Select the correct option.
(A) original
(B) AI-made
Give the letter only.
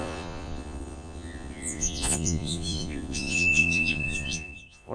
B